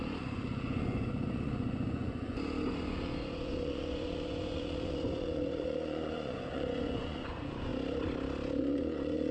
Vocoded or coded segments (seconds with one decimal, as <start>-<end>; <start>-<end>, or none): 0.0-7.7; 8.6-9.3

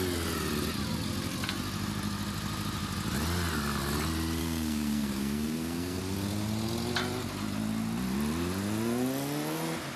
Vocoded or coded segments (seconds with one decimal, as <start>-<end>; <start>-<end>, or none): 4.4-6.0

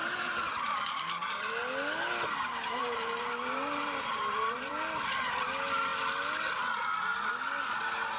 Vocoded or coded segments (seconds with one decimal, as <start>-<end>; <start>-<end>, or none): 0.0-1.5; 2.8-4.7

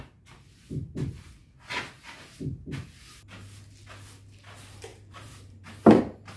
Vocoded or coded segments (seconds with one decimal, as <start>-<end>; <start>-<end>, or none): 4.9-6.0

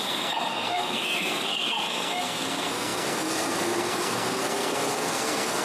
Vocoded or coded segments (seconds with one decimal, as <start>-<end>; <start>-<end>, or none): 0.0-5.6

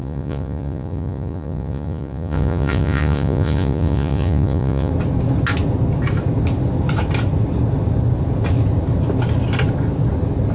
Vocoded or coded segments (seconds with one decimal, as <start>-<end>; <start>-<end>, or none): 0.0-4.9